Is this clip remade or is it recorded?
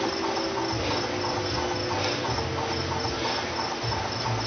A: recorded